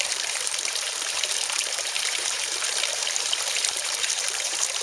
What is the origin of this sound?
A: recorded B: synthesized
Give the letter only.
B